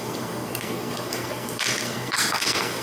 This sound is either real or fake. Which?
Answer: fake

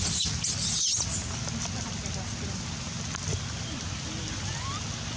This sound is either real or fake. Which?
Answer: real